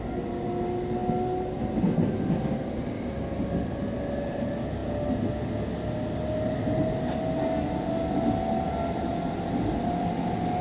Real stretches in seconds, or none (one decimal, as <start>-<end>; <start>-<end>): 0.0-10.6